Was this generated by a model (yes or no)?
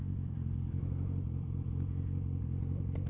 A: no